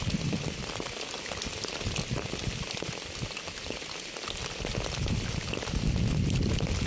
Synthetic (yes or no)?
no